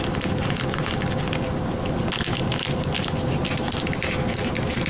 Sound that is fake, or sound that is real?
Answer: real